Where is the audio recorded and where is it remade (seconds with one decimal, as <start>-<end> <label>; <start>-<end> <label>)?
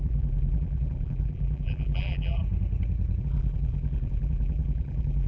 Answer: 0.0-2.4 remade; 2.4-3.2 recorded; 3.2-5.3 remade